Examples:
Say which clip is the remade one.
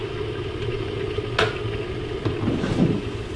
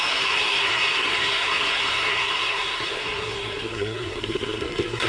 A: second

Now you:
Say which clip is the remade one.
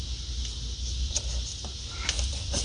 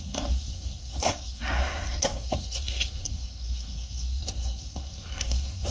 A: second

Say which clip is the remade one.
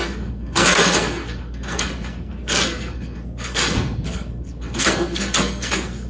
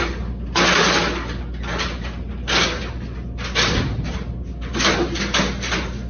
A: first